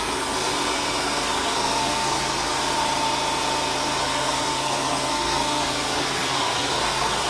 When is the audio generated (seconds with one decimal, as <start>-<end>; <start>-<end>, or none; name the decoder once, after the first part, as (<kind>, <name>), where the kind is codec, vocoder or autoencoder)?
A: 0.0-2.5 (codec, SNAC); 4.0-7.3